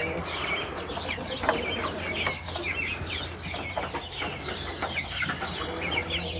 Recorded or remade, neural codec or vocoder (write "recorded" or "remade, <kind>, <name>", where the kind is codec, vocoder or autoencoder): recorded